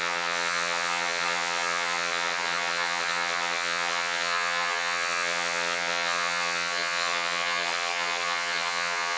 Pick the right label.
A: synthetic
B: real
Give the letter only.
A